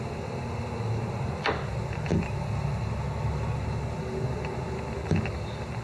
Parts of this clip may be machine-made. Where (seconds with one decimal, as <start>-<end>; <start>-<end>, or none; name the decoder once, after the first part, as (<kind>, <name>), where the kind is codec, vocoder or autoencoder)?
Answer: none